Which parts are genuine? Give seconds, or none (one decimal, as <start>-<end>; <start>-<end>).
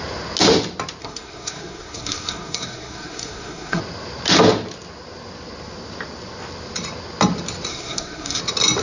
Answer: 0.0-1.0; 3.8-7.7; 8.4-8.8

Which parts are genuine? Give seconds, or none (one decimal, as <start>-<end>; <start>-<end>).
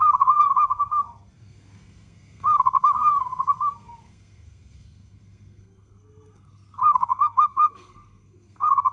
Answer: none